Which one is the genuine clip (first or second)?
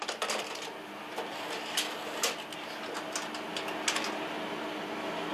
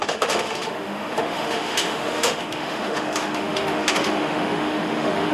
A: first